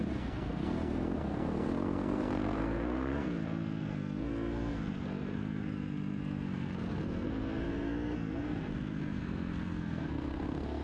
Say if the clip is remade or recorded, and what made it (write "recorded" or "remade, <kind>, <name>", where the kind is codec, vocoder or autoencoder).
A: remade, codec, SNAC